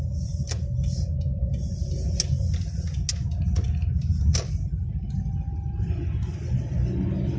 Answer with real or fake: real